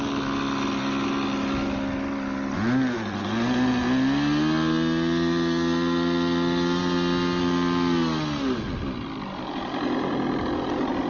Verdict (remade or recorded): recorded